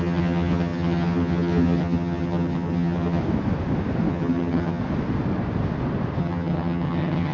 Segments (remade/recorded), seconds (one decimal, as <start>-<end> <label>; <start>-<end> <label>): 0.0-3.2 remade; 3.2-4.1 recorded; 4.1-4.8 remade; 4.8-6.2 recorded; 6.2-7.3 remade